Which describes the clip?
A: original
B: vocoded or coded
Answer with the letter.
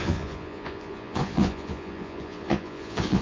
B